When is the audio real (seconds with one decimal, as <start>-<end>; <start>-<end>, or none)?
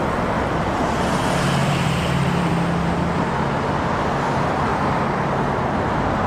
0.0-1.6; 2.5-6.3